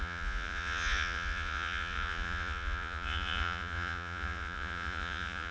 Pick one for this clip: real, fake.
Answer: fake